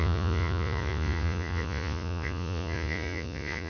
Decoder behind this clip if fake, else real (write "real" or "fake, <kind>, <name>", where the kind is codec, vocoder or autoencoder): fake, vocoder, Vocos